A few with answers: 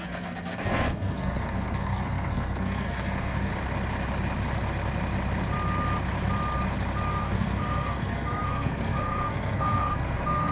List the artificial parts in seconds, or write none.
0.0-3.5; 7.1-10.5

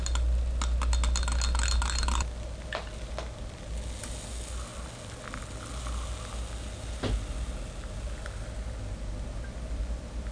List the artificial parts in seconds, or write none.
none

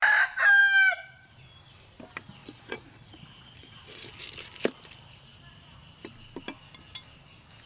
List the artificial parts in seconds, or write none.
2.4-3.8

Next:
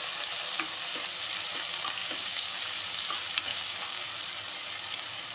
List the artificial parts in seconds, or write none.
2.0-2.6; 3.5-4.1